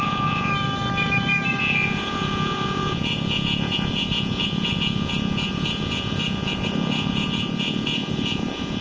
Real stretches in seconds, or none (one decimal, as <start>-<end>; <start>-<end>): 0.5-1.6